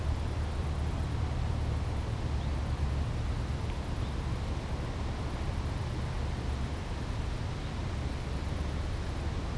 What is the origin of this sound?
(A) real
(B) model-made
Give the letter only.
A